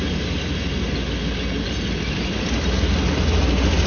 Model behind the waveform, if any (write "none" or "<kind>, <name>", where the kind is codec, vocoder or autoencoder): none